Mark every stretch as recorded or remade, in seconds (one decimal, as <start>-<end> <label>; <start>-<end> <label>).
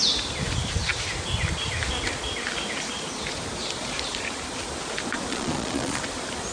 0.0-5.3 recorded; 5.3-6.0 remade; 6.0-6.5 recorded